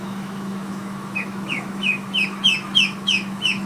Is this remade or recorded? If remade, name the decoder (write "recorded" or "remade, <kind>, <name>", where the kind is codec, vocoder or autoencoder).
remade, autoencoder, DAC-VAE